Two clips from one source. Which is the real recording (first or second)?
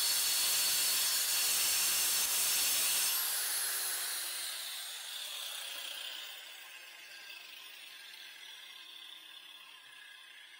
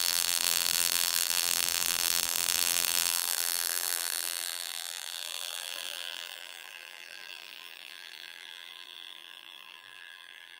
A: first